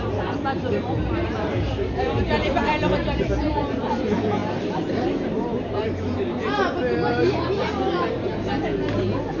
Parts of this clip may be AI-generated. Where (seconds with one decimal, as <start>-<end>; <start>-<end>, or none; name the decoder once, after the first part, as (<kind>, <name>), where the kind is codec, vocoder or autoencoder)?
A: none